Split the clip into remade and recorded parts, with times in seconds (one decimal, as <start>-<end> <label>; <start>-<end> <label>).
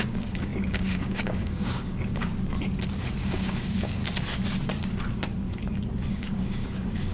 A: 0.0-2.3 remade; 2.3-3.2 recorded; 3.2-4.0 remade; 4.0-6.1 recorded; 6.1-7.1 remade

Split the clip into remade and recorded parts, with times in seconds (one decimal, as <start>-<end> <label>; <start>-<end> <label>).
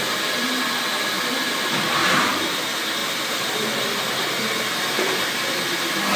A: 0.0-2.0 recorded; 2.0-2.6 remade; 2.6-3.0 recorded; 3.0-5.3 remade; 5.3-6.2 recorded